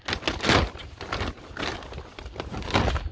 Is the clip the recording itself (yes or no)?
yes